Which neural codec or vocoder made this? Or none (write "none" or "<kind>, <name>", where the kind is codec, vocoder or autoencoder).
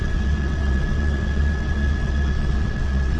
vocoder, WaveNeXt